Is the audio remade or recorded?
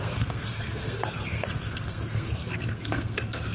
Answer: remade